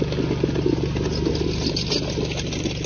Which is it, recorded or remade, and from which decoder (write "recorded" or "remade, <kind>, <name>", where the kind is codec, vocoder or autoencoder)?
recorded